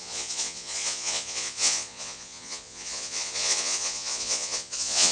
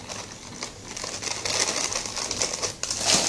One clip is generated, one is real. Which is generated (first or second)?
first